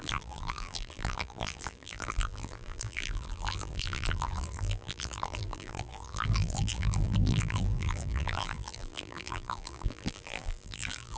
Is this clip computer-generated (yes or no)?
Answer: yes